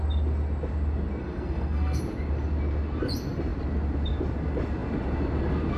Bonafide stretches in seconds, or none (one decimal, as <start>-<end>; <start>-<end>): 0.0-1.2; 2.0-5.8